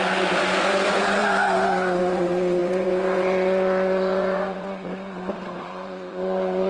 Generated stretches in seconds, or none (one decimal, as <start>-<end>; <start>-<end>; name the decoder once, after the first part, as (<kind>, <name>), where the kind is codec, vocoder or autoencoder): 0.0-1.2 (vocoder, Vocos); 2.0-6.7